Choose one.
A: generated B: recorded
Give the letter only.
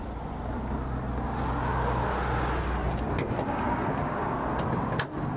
B